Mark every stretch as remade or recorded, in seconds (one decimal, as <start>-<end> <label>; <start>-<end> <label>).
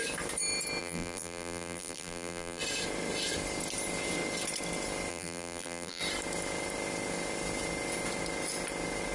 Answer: 0.0-0.8 recorded; 0.8-2.6 remade; 2.6-5.1 recorded; 5.1-6.0 remade; 6.0-9.1 recorded